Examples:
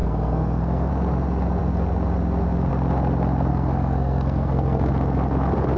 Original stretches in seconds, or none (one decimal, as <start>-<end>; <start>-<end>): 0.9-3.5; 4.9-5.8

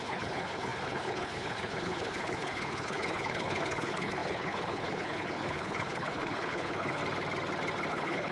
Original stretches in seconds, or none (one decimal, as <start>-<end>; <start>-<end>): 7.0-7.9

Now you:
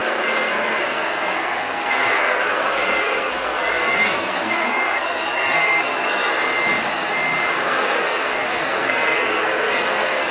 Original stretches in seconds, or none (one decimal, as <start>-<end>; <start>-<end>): 6.3-7.5

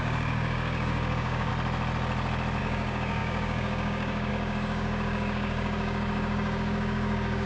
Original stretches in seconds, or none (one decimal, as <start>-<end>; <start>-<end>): 1.5-2.6

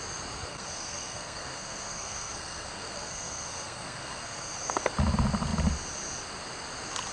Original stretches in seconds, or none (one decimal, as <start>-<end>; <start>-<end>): 0.0-0.5; 4.8-7.1

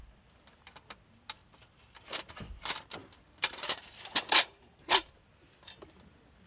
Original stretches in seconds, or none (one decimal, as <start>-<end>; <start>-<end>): 0.0-3.0; 5.1-6.5

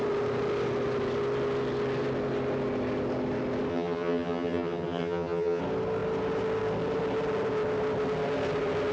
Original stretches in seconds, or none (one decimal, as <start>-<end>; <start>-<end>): 0.0-3.7; 5.6-8.9